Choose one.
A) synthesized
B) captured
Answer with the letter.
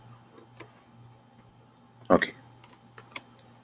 B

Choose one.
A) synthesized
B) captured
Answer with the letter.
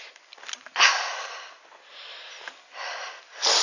B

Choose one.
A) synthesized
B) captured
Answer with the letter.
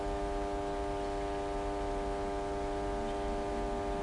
B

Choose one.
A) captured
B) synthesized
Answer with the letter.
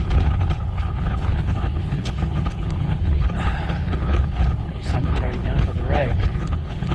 B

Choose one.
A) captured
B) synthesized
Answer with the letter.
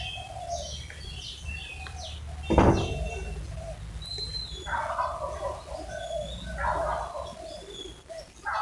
A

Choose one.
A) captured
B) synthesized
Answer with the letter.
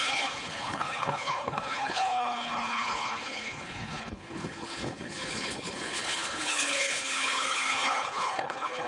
B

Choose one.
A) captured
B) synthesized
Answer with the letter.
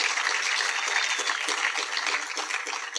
A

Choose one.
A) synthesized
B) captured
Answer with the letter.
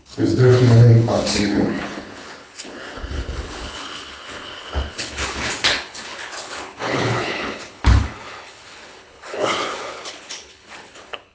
A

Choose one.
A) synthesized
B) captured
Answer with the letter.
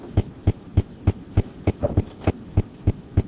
B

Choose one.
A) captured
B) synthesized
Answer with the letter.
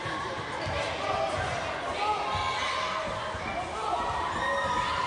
A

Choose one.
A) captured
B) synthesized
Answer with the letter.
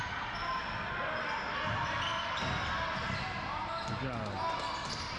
A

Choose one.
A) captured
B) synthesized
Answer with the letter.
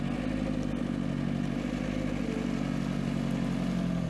A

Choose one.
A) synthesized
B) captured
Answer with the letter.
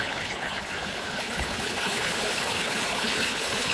A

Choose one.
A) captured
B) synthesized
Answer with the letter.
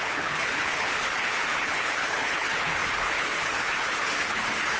B